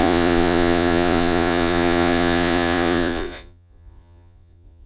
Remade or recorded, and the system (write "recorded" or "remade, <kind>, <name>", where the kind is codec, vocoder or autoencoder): remade, vocoder, Vocos